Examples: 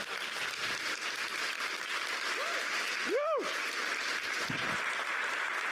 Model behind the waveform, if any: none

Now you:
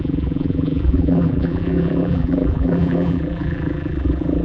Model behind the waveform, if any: vocoder, BigVGAN v2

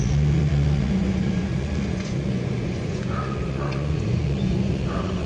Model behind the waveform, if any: vocoder, Vocos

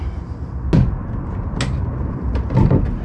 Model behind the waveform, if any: none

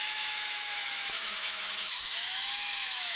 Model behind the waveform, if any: autoencoder, DAC-VAE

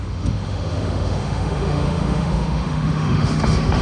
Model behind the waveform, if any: autoencoder, DAC-VAE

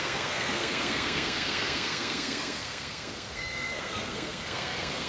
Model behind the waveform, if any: codec, SNAC